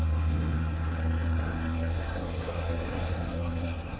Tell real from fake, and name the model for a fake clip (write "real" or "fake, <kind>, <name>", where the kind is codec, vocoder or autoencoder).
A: fake, codec, SNAC